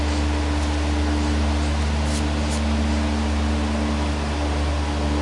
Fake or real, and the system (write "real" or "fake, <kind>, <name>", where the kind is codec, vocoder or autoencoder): real